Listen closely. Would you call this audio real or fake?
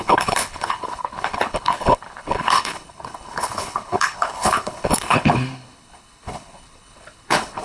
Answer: fake